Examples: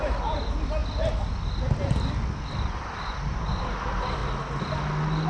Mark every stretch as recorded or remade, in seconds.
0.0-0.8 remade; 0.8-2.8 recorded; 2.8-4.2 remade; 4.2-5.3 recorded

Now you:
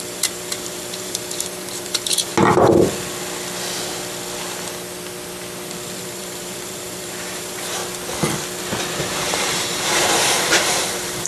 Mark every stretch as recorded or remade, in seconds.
0.0-2.3 remade; 2.3-6.0 recorded; 6.0-7.8 remade; 7.8-9.0 recorded; 9.0-11.3 remade

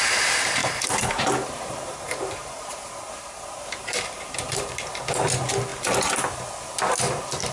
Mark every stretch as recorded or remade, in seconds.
0.0-0.6 recorded; 0.6-5.0 remade; 5.0-7.5 recorded

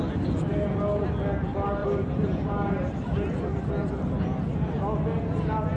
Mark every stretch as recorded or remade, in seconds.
0.0-1.8 recorded; 1.8-3.6 remade; 3.6-5.8 recorded